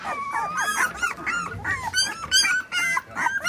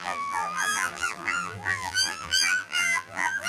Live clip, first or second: first